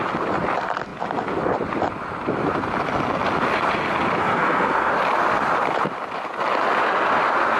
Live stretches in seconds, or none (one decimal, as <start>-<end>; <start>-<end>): 0.0-4.2; 4.9-7.6

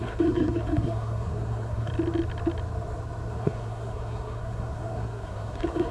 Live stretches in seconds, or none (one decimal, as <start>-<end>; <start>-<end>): 1.9-3.3

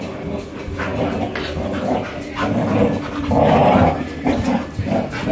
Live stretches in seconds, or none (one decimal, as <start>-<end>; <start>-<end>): 0.0-5.3

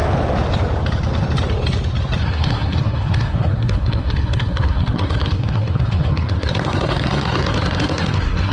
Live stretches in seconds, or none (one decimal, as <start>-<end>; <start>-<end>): 0.0-2.2

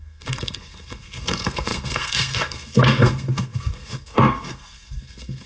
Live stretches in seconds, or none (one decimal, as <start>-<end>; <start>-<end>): none

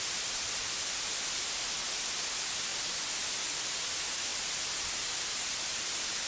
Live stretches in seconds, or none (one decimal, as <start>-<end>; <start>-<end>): 0.0-6.3

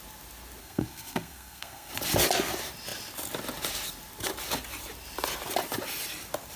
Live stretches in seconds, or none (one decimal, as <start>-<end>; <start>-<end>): 0.0-0.6; 1.9-6.6